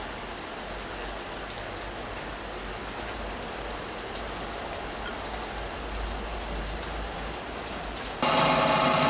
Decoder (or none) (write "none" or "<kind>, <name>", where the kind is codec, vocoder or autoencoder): none